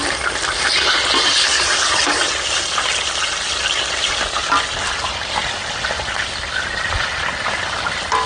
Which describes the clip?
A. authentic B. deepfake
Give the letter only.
A